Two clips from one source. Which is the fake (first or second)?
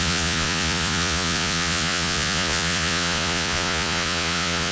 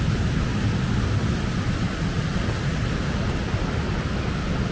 first